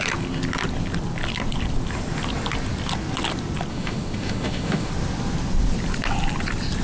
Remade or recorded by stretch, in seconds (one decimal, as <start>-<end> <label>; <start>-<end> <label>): 0.0-3.7 recorded; 3.7-4.9 remade; 4.9-6.8 recorded